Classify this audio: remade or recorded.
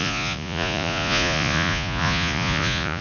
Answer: remade